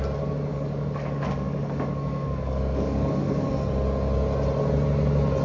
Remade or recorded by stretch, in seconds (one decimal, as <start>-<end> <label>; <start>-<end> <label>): 0.0-0.5 recorded; 0.5-3.5 remade; 3.5-5.4 recorded